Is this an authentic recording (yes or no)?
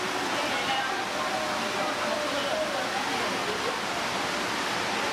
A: yes